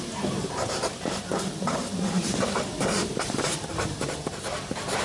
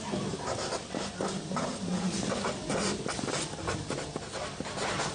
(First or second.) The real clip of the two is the second